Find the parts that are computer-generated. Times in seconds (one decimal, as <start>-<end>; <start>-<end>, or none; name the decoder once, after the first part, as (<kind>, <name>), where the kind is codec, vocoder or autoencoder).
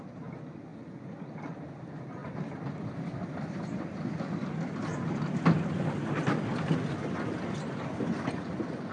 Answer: 2.2-3.8 (vocoder, BigVGAN v2)